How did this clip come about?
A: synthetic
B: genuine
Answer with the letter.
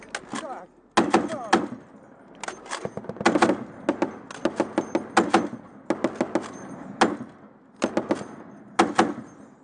B